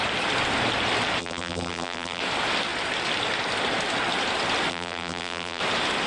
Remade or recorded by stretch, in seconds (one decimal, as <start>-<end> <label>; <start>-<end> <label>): 0.0-1.2 recorded; 1.2-2.2 remade; 2.2-4.7 recorded; 4.7-5.6 remade; 5.6-6.1 recorded